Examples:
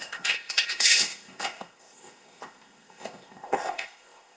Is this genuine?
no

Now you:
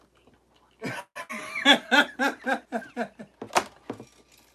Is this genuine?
yes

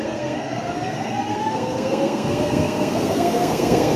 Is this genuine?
no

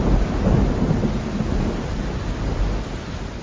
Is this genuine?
yes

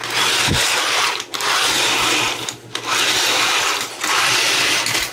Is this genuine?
no